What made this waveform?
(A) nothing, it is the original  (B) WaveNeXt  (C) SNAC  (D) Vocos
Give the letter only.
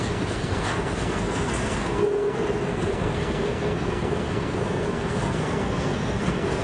C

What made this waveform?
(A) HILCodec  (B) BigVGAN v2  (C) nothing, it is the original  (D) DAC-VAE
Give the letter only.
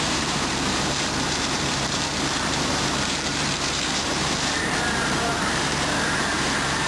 B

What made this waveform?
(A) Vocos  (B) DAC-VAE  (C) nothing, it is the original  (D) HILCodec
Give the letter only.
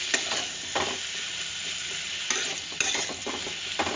C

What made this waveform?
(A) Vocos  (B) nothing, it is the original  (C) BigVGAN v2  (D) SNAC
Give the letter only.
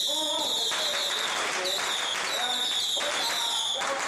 B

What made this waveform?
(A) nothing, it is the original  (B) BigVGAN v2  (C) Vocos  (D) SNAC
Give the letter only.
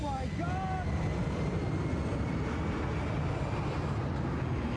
A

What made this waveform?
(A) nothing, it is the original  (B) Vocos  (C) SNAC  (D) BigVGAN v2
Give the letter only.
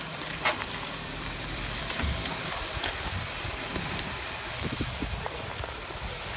D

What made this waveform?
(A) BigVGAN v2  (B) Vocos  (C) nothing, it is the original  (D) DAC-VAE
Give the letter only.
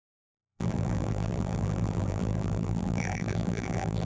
A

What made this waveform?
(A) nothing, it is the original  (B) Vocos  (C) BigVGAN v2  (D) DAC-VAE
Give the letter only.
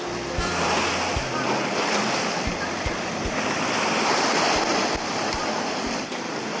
C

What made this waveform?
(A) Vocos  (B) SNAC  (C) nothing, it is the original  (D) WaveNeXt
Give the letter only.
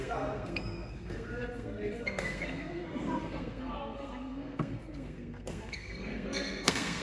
B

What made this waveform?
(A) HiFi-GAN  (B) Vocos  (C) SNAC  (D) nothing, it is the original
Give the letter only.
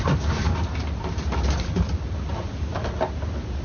D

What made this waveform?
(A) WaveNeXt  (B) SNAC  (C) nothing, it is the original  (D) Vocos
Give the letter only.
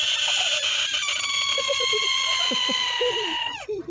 D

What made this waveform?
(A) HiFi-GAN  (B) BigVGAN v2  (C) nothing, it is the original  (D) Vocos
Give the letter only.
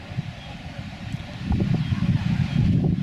C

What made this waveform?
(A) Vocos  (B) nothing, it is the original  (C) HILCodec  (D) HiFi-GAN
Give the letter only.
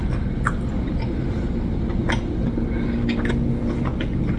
B